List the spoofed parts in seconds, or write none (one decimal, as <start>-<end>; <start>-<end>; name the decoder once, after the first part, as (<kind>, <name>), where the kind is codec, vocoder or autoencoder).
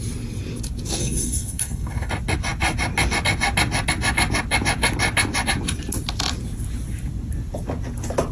1.0-2.1 (codec, SNAC)